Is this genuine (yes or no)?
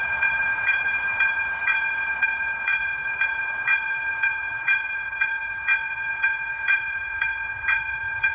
no